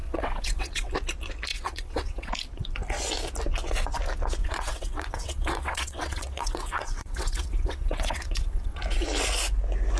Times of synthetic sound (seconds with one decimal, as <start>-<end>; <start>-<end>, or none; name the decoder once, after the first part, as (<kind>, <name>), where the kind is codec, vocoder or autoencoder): 0.0-0.9 (vocoder, WaveNeXt); 1.5-2.3; 4.4-8.8

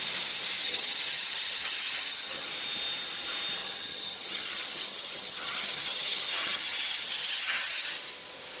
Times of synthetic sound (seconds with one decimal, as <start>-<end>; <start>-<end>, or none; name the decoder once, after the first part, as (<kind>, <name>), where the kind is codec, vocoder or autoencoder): 0.6-2.5 (vocoder, HiFi-GAN); 3.6-7.9

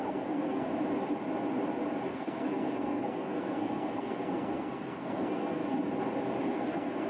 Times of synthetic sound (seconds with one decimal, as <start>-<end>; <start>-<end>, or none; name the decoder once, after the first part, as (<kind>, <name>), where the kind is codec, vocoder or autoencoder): 0.0-0.7 (codec, SNAC); 2.1-5.6; 6.5-7.1

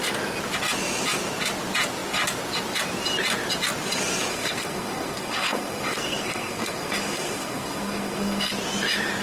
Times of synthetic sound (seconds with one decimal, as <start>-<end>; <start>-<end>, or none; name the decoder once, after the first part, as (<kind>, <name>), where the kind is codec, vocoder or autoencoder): 4.3-8.5 (codec, SNAC)

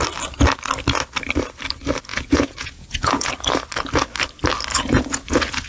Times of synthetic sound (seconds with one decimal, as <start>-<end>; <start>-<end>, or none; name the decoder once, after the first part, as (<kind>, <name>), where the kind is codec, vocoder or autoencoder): 2.1-3.3 (vocoder, Vocos); 4.7-5.7